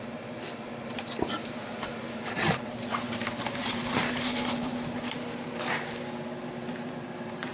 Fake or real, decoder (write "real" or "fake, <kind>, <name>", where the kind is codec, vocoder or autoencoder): fake, vocoder, BigVGAN v2